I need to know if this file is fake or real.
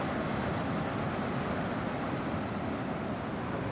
real